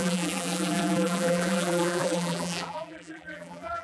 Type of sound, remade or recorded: remade